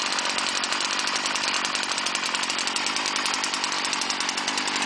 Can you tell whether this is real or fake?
real